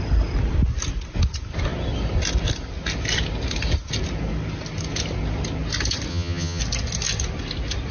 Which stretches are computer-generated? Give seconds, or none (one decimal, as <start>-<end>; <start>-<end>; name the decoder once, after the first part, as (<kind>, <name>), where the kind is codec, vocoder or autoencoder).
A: 6.1-6.6 (vocoder, HiFi-GAN)